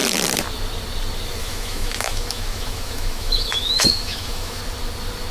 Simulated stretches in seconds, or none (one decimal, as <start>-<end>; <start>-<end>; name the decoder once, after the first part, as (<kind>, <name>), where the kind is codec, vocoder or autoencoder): 1.4-4.6 (autoencoder, DAC-VAE)